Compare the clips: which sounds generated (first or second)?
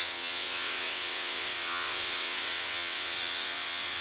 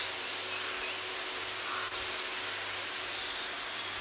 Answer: first